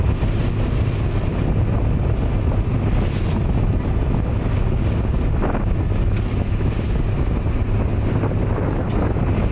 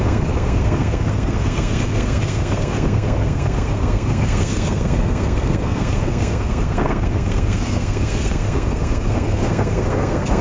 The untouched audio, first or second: first